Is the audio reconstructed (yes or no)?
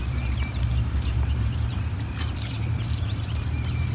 yes